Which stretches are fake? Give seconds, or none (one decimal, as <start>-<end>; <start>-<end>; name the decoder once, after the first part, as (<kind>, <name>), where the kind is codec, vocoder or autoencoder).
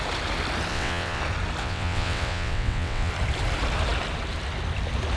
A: 0.7-1.2 (vocoder, WaveNeXt); 1.6-3.1